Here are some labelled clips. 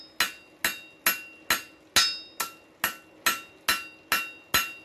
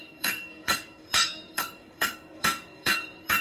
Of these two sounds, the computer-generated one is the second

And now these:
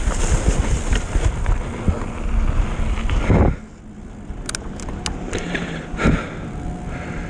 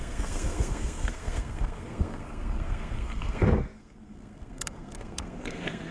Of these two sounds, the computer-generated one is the second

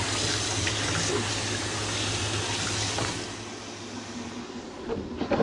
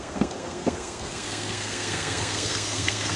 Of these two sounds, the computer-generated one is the second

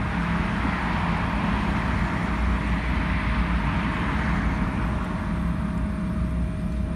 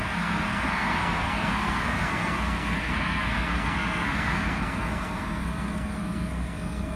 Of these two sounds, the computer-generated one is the second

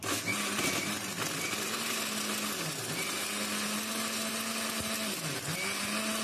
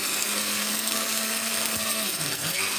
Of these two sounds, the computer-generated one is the second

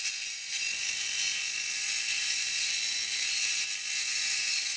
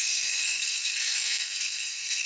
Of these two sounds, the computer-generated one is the second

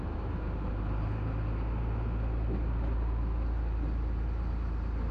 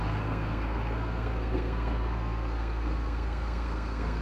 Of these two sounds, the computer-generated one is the second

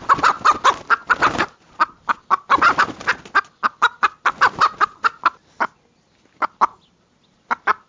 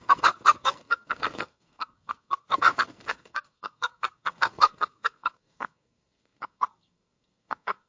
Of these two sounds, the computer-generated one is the second